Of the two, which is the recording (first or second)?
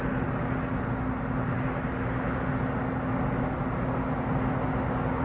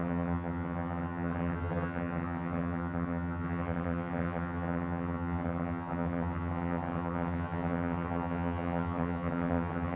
first